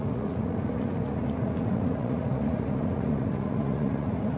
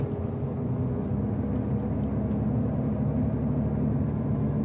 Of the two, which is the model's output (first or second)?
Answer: first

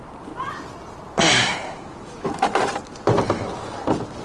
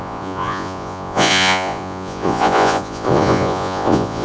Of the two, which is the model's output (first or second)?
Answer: second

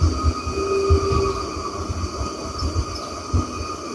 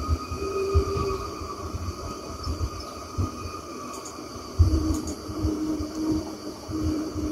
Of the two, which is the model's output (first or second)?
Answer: second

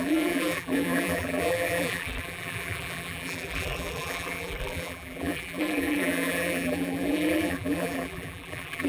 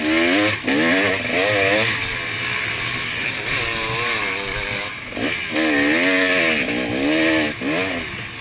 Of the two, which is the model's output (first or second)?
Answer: first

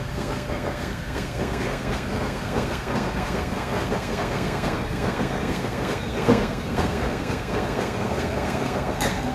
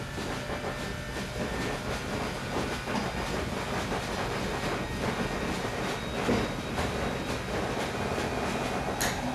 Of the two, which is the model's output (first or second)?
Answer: first